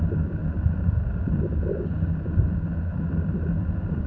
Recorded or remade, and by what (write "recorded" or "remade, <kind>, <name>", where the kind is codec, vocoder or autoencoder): recorded